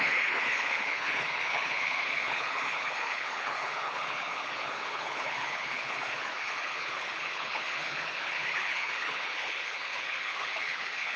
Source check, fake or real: fake